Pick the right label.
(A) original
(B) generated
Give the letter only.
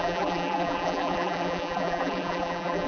B